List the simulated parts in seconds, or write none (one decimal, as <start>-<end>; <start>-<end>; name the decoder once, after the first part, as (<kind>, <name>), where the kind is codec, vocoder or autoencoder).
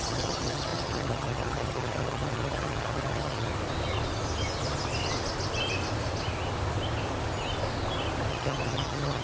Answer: 0.0-3.5 (vocoder, HiFi-GAN); 8.3-9.2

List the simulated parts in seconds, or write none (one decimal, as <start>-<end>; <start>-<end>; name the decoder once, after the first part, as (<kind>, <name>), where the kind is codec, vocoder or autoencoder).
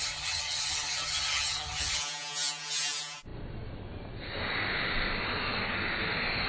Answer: 0.0-2.0 (vocoder, HiFi-GAN)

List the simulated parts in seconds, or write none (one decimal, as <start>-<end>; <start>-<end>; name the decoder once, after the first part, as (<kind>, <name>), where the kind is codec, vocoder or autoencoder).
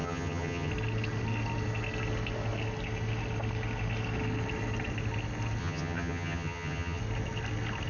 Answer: 0.0-0.7 (vocoder, HiFi-GAN); 5.6-7.0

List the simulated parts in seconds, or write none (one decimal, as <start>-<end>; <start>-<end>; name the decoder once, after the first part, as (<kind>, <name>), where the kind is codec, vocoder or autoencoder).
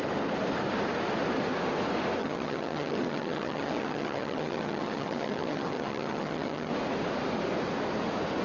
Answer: 2.2-6.7 (vocoder, HiFi-GAN)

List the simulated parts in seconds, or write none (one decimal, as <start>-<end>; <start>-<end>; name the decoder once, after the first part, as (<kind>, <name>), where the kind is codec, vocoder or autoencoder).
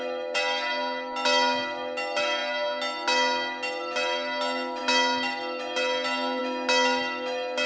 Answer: none